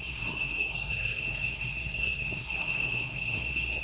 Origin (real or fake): fake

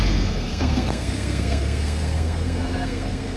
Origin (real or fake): fake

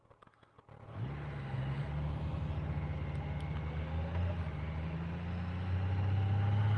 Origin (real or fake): real